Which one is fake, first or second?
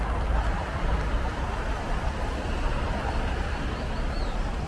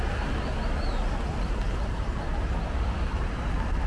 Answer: first